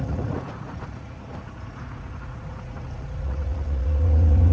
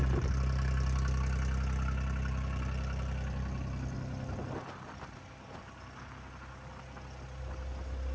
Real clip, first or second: second